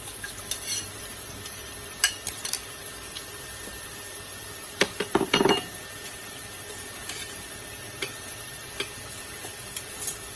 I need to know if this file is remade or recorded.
remade